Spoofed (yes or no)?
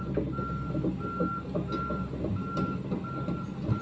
no